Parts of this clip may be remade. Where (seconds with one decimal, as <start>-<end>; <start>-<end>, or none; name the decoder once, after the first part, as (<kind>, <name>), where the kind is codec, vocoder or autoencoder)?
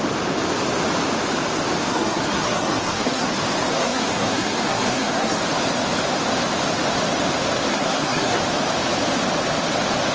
1.9-3.3 (codec, SNAC); 3.7-5.4; 7.7-8.4